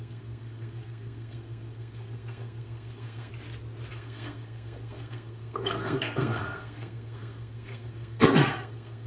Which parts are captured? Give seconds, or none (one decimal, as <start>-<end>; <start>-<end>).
3.3-3.9